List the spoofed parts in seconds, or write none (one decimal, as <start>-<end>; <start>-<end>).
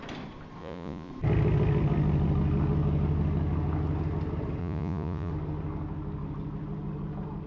0.6-1.1; 4.6-5.3